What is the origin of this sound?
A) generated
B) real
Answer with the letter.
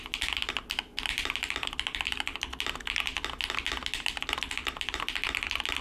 B